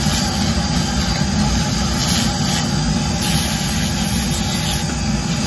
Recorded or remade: recorded